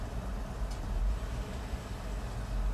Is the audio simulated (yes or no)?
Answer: no